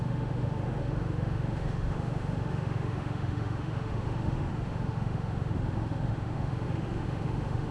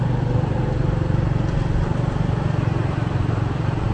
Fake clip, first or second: first